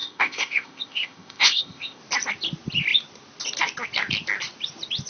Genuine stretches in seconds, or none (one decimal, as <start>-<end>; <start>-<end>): 2.0-5.1